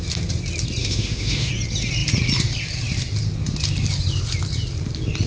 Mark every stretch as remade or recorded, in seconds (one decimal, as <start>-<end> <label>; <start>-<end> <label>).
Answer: 0.0-0.8 recorded; 0.8-1.5 remade; 1.5-5.3 recorded